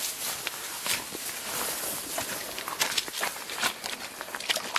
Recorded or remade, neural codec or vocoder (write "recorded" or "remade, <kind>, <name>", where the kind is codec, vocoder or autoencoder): recorded